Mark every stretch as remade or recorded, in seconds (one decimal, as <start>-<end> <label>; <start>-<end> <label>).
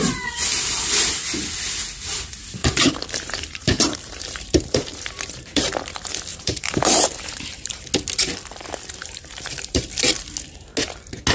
0.0-2.6 recorded; 2.6-5.6 remade; 5.6-6.3 recorded; 6.3-7.8 remade; 7.8-9.0 recorded; 9.0-9.8 remade; 9.8-11.3 recorded